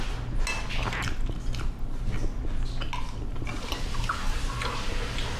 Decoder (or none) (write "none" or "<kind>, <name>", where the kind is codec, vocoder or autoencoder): none